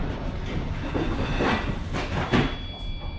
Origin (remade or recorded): recorded